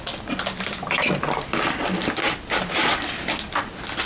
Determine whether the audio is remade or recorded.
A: recorded